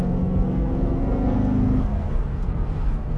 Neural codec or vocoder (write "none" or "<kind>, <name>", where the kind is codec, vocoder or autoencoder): codec, SNAC